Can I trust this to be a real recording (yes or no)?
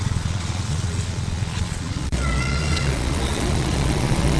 no